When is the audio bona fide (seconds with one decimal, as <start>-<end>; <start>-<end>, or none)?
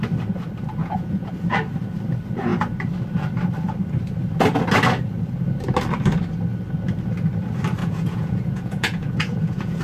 0.0-0.8; 1.3-7.8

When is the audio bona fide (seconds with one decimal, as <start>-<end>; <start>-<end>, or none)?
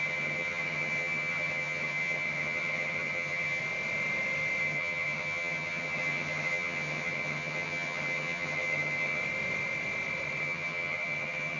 3.6-4.6; 9.2-10.4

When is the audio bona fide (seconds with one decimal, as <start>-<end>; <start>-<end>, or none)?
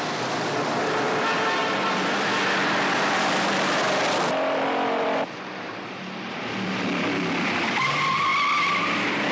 8.3-9.3